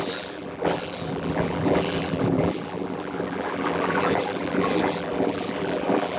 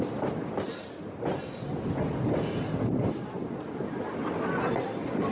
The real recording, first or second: second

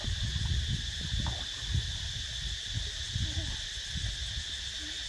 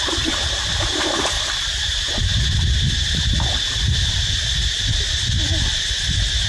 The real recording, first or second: first